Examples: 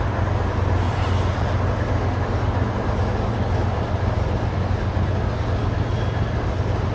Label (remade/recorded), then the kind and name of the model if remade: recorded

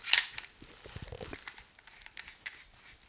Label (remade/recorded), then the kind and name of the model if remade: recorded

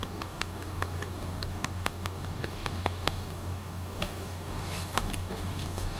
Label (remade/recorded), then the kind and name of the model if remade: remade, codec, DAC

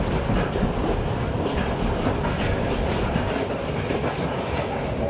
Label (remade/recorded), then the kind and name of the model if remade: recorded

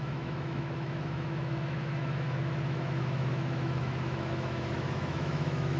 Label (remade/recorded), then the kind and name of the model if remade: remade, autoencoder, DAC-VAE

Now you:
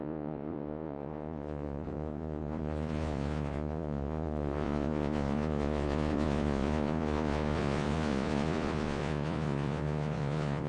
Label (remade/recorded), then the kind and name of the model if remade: remade, vocoder, Vocos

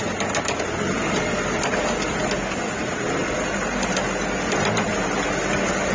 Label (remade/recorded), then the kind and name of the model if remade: recorded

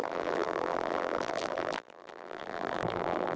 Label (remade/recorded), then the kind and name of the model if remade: remade, vocoder, BigVGAN v2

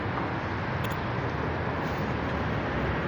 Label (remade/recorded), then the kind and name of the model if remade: recorded